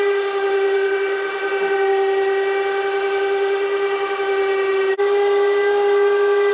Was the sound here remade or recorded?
recorded